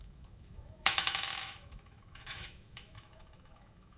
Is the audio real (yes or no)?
no